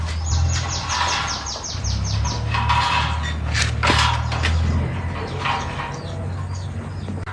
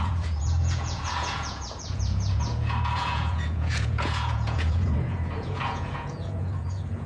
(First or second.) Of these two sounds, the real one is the first